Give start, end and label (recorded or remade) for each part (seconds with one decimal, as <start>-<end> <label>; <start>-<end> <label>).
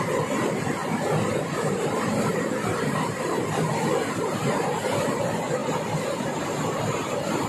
0.0-0.8 remade; 0.8-1.3 recorded; 1.3-5.6 remade; 5.6-7.5 recorded